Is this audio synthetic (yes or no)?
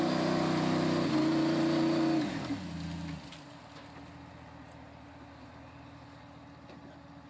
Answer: no